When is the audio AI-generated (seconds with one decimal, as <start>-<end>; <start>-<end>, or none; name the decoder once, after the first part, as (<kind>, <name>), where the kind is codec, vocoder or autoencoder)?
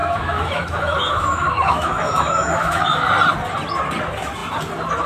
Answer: 0.0-3.1 (autoencoder, DAC-VAE)